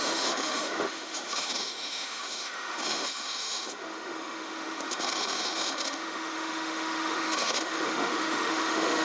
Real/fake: fake